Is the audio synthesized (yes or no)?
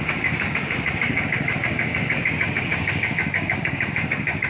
yes